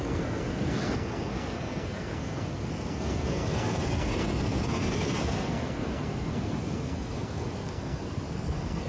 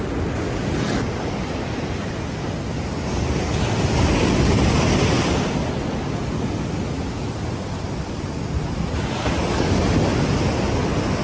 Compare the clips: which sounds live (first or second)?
second